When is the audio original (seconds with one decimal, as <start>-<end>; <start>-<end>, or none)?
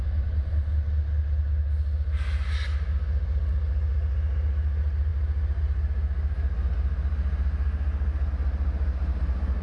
0.0-9.6